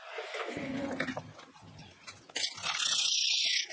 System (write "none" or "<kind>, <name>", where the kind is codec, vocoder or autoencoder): none